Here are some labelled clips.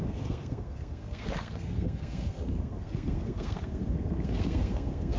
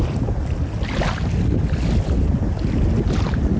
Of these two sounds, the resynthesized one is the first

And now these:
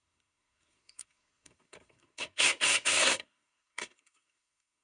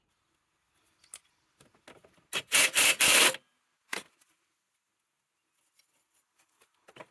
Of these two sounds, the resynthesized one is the first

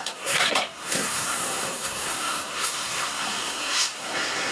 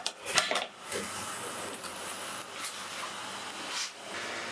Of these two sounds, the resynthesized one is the first